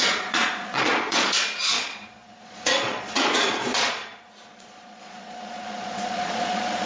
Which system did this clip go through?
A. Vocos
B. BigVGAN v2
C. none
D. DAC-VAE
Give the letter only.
A